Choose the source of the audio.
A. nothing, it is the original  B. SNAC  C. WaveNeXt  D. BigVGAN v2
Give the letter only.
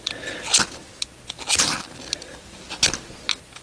A